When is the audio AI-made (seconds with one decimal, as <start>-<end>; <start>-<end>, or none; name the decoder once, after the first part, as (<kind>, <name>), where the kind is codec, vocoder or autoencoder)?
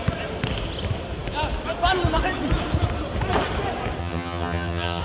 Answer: 4.0-5.0 (vocoder, HiFi-GAN)